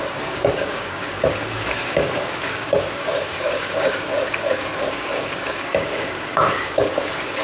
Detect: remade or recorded remade